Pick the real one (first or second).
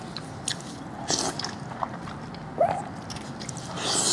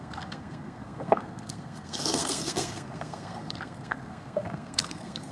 first